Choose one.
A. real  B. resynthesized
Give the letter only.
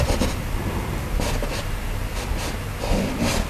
A